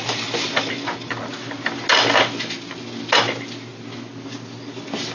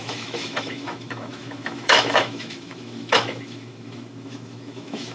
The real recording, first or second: first